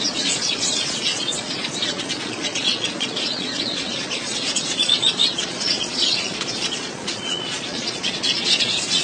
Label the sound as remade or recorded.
remade